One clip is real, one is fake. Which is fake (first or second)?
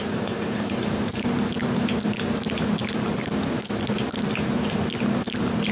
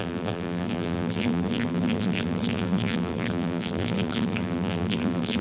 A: second